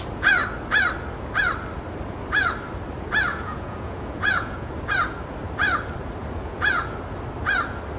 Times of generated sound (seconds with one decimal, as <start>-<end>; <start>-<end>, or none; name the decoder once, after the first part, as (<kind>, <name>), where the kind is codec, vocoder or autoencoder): 3.3-4.7 (vocoder, Vocos); 6.2-6.8